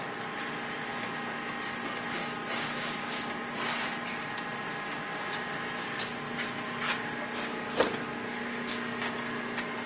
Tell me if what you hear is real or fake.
real